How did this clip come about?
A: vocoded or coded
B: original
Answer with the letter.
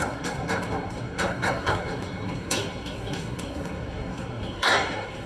A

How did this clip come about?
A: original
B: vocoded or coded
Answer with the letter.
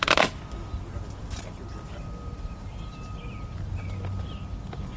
A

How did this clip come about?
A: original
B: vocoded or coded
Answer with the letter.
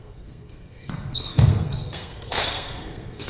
B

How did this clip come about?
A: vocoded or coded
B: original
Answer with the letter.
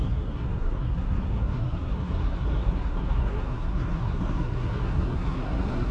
A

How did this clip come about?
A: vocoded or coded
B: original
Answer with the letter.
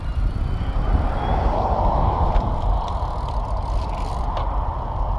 B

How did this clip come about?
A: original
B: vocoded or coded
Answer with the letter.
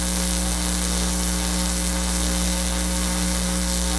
B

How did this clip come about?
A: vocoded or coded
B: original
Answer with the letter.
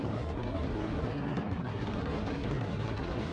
A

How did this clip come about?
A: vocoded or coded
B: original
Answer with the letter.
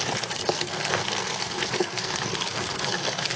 A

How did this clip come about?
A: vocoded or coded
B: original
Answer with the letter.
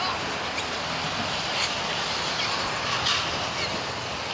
B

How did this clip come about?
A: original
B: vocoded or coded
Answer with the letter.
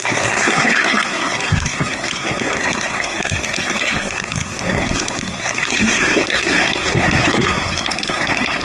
B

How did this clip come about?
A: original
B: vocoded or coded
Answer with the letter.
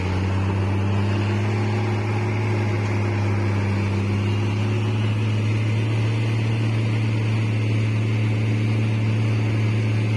A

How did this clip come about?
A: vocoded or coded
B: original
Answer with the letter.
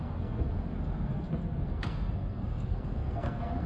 A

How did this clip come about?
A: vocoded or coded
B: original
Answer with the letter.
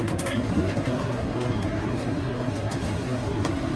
A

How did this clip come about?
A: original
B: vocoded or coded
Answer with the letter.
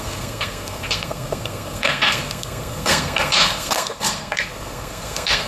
B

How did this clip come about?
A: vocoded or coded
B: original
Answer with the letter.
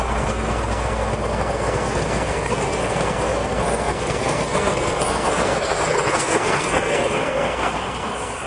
A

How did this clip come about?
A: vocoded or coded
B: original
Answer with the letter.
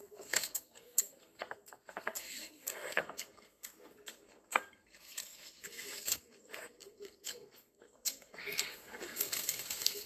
A